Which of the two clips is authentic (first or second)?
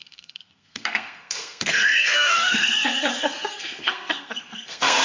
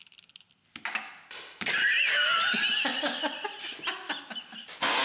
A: second